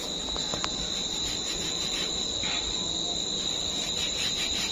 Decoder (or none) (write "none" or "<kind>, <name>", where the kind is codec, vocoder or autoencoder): none